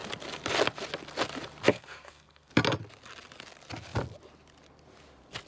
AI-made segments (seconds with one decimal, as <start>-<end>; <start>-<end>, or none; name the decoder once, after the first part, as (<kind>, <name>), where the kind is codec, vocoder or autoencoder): 1.7-2.5 (codec, SNAC)